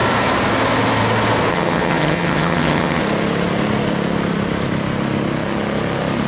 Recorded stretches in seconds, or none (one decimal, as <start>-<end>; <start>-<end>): 0.0-1.5; 3.0-6.3